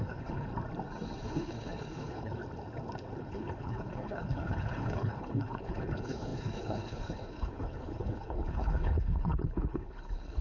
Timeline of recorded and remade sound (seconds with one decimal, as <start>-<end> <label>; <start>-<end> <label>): 0.0-0.5 remade; 0.5-1.2 recorded; 1.2-2.4 remade; 2.4-3.2 recorded; 3.2-10.4 remade